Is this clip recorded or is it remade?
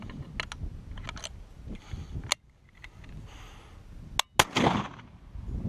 recorded